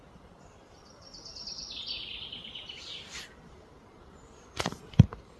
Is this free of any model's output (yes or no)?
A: no